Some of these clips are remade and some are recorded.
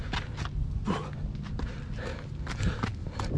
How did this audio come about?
recorded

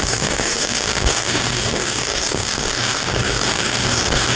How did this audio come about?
remade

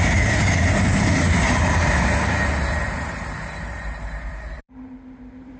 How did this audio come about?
remade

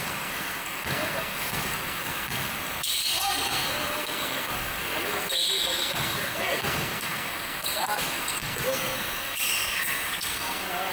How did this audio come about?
remade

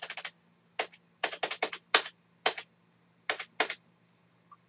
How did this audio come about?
recorded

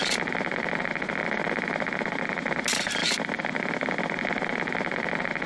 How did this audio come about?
recorded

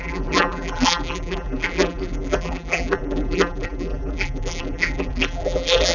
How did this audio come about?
remade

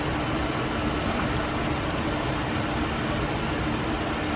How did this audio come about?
recorded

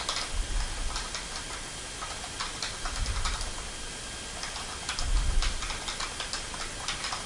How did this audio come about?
recorded